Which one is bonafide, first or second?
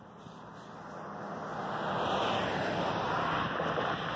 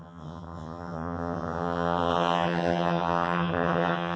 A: first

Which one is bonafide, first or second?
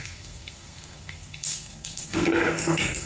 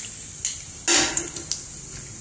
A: second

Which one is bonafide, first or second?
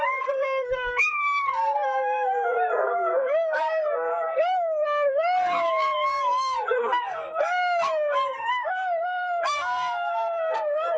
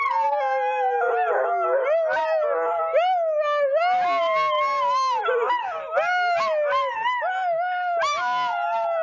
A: second